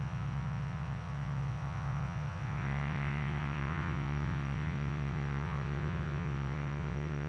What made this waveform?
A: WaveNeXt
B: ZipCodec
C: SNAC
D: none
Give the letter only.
A